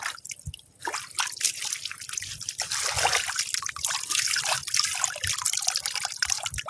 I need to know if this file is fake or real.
real